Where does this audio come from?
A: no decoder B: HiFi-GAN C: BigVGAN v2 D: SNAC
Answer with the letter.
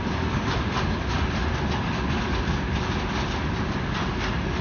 A